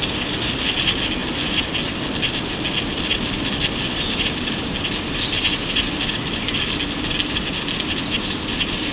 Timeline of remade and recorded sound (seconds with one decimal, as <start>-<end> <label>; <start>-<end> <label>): 0.0-8.9 recorded